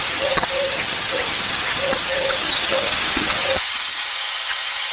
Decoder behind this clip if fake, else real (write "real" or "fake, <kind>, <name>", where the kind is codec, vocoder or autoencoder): fake, vocoder, HiFi-GAN